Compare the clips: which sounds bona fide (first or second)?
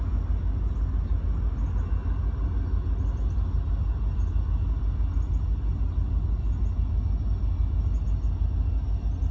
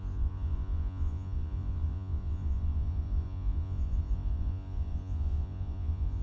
first